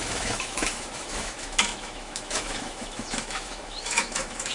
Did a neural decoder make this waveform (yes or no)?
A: yes